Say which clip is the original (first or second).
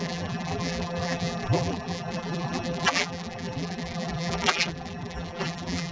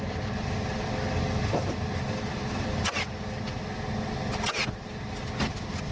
second